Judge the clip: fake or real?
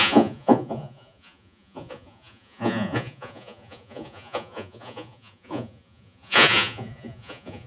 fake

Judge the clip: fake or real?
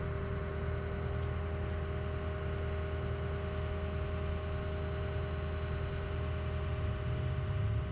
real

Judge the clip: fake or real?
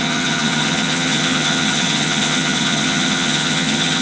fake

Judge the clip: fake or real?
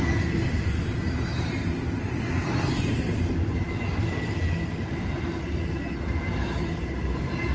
real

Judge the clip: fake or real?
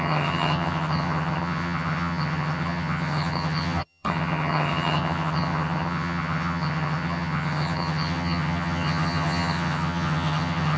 fake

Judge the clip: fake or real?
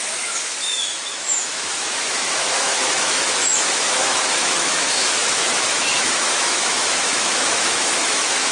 fake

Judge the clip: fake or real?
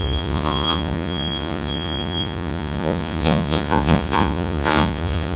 fake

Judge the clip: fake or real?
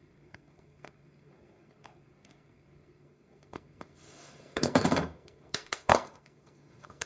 fake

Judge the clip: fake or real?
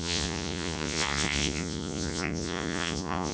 fake